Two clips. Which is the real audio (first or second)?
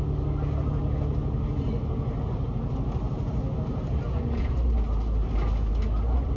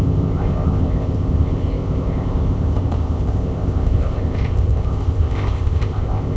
first